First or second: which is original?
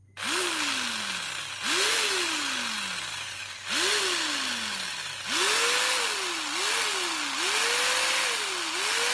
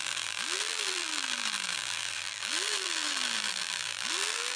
first